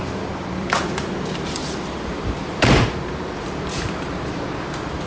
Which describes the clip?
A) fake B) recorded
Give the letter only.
A